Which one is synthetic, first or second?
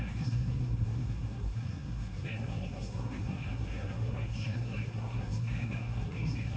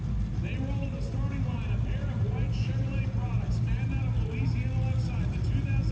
first